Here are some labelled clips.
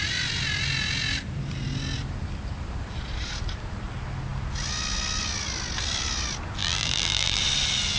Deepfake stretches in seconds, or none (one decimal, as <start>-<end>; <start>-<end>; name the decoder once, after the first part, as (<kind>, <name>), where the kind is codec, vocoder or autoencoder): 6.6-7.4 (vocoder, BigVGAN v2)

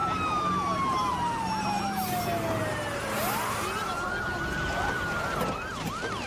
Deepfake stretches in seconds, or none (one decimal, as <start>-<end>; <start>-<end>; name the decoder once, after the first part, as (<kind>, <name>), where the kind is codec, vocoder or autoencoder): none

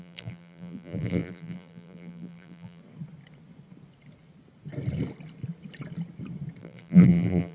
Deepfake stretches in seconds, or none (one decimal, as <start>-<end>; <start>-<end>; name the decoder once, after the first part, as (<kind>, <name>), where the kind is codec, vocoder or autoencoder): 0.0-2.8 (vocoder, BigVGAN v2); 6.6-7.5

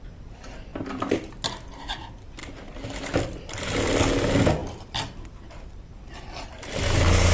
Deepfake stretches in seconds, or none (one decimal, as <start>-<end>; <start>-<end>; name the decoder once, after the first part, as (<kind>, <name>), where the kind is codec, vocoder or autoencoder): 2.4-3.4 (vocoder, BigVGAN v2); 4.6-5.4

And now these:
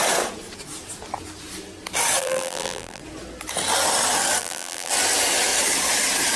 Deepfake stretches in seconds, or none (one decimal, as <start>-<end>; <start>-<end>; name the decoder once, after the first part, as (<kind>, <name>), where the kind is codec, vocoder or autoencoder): 2.2-3.0 (vocoder, BigVGAN v2); 4.4-4.9